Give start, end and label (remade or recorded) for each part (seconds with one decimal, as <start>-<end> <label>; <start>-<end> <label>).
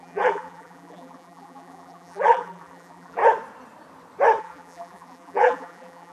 0.0-3.2 remade; 3.2-4.4 recorded; 4.4-6.1 remade